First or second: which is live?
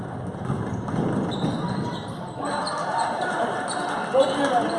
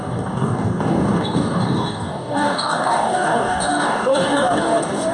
first